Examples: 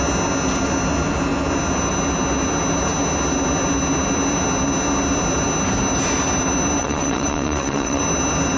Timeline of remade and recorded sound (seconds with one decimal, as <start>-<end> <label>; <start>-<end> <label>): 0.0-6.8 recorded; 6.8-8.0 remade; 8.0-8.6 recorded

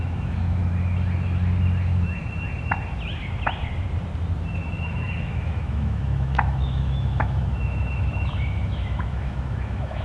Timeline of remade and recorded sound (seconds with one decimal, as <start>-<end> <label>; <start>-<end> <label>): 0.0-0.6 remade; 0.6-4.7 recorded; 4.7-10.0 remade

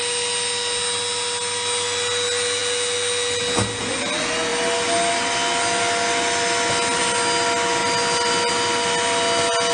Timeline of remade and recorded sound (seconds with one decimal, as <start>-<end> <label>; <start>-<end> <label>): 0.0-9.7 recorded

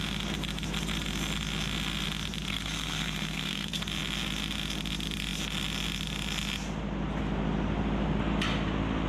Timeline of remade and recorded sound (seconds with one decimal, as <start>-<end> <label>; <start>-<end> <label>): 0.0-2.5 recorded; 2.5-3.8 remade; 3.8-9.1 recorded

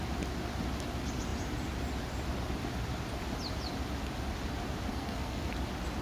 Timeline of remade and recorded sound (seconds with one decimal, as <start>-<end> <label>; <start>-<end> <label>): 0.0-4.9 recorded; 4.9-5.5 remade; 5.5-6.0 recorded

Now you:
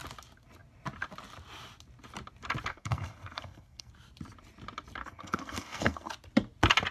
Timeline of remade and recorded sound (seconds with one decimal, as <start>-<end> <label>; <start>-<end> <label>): 0.0-2.7 recorded; 2.7-3.9 remade; 3.9-5.0 recorded; 5.0-6.1 remade; 6.1-6.9 recorded